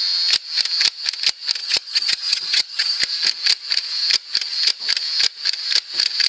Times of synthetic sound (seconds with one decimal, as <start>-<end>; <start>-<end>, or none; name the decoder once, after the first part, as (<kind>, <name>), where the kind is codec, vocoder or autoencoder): 1.6-3.0 (vocoder, HiFi-GAN)